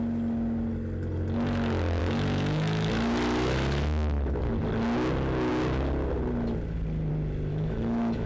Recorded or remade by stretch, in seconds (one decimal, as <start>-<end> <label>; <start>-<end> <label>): 0.0-2.0 recorded; 2.0-2.9 remade; 2.9-7.5 recorded; 7.5-8.3 remade